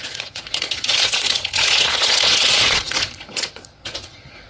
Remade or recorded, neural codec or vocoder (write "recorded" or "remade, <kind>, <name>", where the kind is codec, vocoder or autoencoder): remade, vocoder, Vocos